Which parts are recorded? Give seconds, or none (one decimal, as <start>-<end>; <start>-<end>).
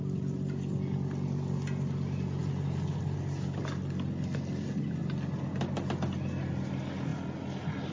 0.0-7.9